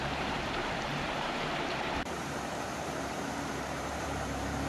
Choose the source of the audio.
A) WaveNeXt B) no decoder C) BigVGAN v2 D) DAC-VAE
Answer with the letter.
C